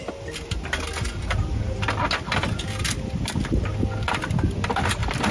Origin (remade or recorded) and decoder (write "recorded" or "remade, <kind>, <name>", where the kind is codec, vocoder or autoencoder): recorded